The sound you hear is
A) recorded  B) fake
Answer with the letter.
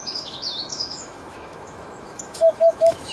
B